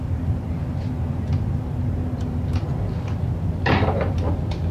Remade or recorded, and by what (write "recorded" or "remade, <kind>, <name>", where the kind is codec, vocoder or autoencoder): remade, vocoder, BigVGAN v2